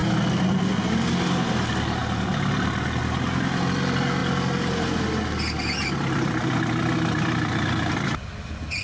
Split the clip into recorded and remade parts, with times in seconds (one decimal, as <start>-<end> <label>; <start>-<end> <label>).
0.0-5.8 recorded; 5.8-8.8 remade